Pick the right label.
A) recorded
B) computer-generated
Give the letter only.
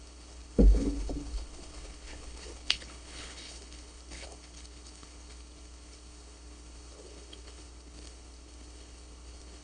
B